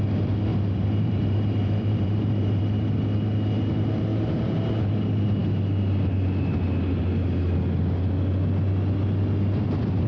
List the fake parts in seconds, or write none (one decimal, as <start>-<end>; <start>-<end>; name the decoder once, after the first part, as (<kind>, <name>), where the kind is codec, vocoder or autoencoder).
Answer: 0.5-2.6 (vocoder, BigVGAN v2); 4.1-4.8